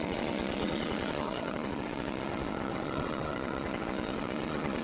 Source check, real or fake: fake